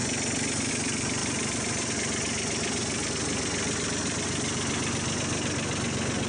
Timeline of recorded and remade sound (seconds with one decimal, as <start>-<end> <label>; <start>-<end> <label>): 0.0-1.2 recorded; 1.2-1.9 remade; 1.9-6.3 recorded